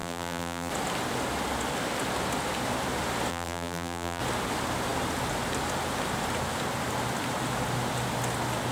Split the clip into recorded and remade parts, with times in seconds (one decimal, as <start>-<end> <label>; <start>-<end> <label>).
0.0-0.7 remade; 0.7-3.3 recorded; 3.3-4.2 remade; 4.2-8.7 recorded